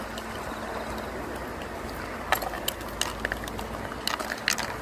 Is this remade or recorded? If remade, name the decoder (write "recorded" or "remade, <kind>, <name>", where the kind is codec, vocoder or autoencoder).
recorded